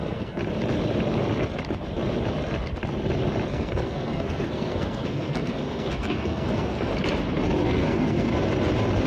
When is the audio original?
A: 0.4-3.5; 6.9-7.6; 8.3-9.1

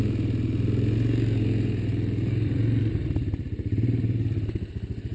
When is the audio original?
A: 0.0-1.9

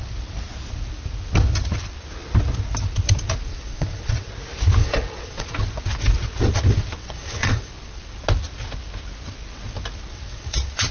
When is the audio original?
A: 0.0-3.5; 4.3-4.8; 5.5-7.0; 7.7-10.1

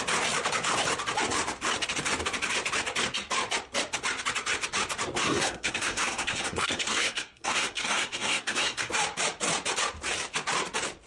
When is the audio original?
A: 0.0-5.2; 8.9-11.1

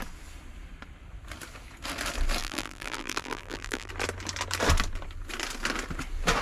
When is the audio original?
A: 0.0-2.4; 3.9-6.4

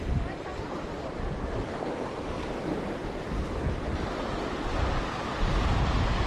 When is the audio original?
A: 0.0-6.3

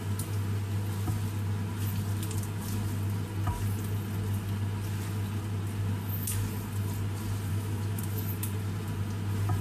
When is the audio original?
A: 0.0-7.5; 8.0-9.6